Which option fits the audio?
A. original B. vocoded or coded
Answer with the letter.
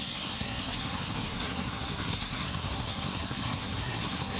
B